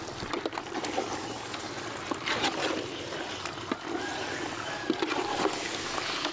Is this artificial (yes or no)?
no